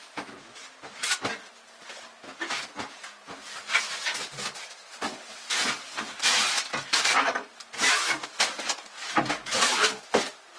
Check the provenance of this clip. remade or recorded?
recorded